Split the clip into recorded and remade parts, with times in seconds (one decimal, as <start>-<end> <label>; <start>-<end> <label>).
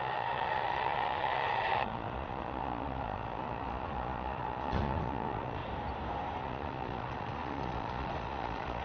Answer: 0.0-5.6 remade; 5.6-6.4 recorded; 6.4-8.8 remade